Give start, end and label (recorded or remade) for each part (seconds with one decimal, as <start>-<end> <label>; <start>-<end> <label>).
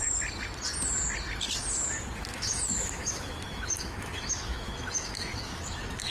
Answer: 0.0-2.3 recorded; 2.3-6.1 remade